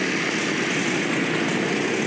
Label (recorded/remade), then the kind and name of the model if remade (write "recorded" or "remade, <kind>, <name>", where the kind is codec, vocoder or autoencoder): recorded